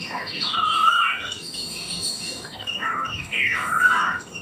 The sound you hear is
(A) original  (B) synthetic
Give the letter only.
B